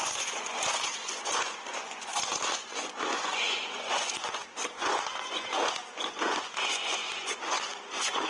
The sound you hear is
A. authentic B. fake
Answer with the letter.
B